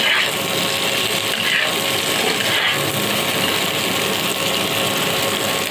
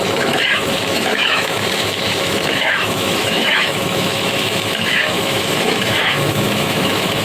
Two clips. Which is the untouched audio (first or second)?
first